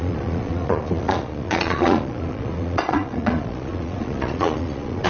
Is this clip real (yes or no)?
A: no